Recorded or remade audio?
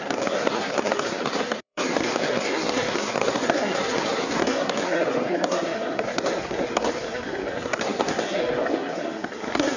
remade